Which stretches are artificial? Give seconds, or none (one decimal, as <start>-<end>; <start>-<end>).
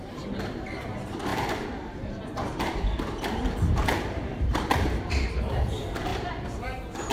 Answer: 0.0-6.1